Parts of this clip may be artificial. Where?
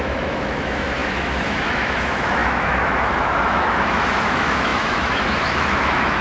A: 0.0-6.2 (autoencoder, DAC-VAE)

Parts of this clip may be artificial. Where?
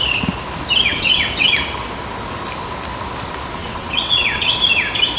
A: 0.9-1.5 (vocoder, WaveNeXt); 3.6-4.5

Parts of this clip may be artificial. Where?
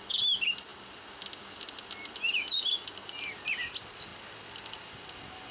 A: none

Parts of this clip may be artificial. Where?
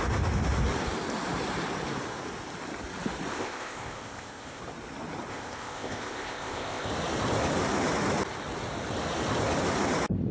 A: 3.3-4.6 (codec, ZipCodec); 5.3-6.9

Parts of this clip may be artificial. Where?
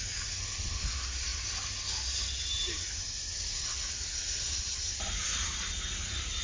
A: none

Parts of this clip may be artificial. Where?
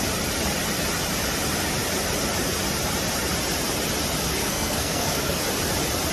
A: 4.4-5.4 (codec, SNAC)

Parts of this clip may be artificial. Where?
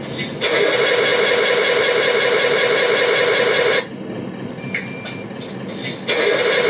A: none